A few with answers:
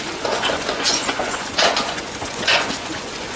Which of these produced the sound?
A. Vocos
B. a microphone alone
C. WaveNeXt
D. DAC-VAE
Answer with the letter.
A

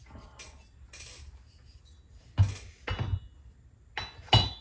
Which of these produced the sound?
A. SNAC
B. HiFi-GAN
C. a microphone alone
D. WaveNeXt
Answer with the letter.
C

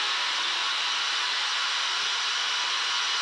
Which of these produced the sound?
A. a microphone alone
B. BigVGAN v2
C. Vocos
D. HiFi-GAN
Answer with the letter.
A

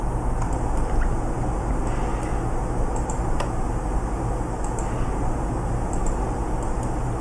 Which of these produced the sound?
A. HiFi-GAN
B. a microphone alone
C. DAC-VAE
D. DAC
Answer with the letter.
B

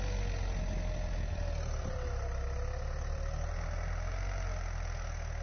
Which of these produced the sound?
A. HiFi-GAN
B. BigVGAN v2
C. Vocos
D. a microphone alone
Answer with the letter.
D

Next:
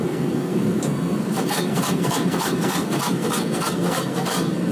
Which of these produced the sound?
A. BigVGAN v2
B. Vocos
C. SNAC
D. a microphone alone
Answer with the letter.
C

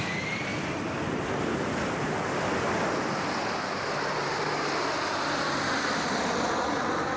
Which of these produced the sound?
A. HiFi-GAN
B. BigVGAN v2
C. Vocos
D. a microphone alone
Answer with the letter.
B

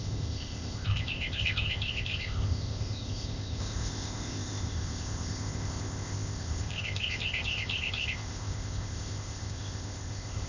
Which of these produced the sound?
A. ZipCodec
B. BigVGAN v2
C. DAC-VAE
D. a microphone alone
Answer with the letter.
A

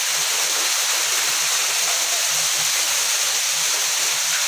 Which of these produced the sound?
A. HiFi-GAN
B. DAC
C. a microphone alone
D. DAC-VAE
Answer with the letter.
C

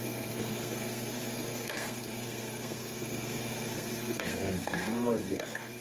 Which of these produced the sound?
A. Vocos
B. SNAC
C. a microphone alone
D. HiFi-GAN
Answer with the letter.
B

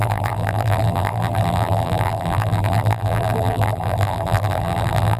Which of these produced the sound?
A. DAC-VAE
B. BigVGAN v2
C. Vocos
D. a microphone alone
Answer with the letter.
B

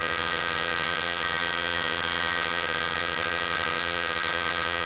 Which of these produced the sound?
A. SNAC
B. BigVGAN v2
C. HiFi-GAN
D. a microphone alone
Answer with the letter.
C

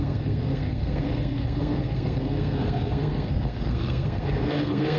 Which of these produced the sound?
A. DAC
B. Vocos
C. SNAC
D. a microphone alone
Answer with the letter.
C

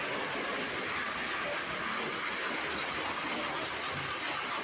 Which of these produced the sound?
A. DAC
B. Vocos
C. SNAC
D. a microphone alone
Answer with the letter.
D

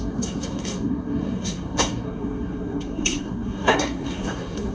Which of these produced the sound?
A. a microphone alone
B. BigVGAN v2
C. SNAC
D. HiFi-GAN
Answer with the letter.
C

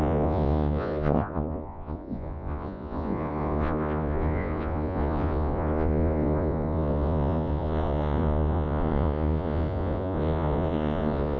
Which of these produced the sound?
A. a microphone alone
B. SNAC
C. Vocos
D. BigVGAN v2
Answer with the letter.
C